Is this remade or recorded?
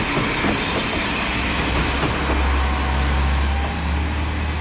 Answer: recorded